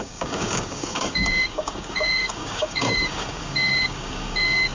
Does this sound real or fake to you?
fake